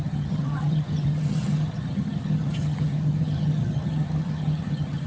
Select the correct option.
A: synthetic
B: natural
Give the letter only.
A